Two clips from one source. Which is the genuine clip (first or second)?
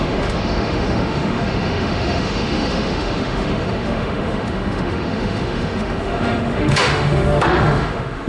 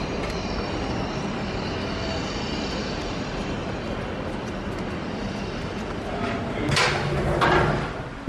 second